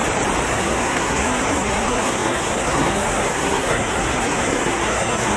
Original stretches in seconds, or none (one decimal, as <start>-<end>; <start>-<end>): 0.0-0.5